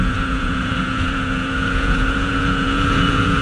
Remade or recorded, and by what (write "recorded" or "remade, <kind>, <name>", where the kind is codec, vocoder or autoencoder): remade, vocoder, Vocos